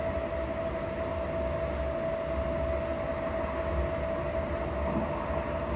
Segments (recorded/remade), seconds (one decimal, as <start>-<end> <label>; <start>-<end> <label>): 0.0-5.8 recorded

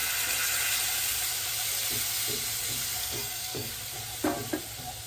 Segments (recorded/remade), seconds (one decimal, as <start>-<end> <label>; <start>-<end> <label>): 0.0-3.0 recorded; 3.0-3.7 remade; 3.7-5.1 recorded

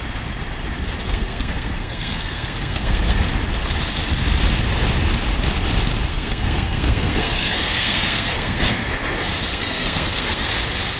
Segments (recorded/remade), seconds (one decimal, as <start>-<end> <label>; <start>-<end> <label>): 0.0-1.0 recorded; 1.0-3.2 remade; 3.2-6.1 recorded; 6.1-8.9 remade; 8.9-9.5 recorded; 9.5-10.5 remade; 10.5-11.0 recorded

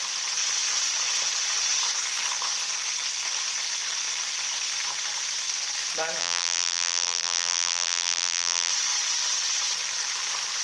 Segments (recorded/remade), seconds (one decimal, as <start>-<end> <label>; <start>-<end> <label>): 0.0-6.2 recorded; 6.2-8.7 remade; 8.7-10.6 recorded

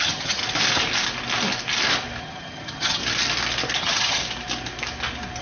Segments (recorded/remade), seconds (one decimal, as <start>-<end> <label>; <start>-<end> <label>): 0.0-0.4 remade; 0.4-2.2 recorded; 2.2-3.0 remade; 3.0-3.8 recorded; 3.8-4.2 remade; 4.2-5.4 recorded

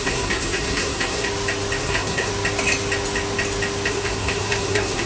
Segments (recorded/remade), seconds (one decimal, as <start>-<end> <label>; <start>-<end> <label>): 0.0-1.3 remade; 1.3-1.8 recorded; 1.8-2.3 remade; 2.3-3.9 recorded; 3.9-5.1 remade

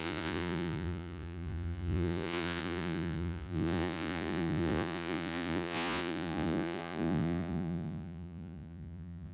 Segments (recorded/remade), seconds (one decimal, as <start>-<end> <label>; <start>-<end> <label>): 0.0-9.3 remade

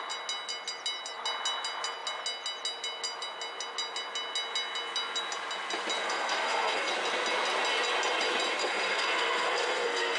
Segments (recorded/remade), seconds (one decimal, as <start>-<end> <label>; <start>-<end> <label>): 0.0-6.0 recorded; 6.0-6.9 remade; 6.9-8.6 recorded; 8.6-10.2 remade